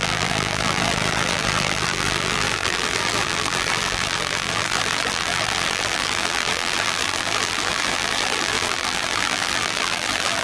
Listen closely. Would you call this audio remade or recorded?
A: remade